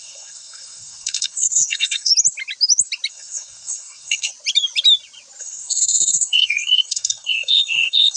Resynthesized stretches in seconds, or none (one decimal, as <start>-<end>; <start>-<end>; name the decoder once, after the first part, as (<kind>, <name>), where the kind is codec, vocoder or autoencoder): 0.0-2.1 (codec, SNAC); 3.1-4.3; 5.4-8.2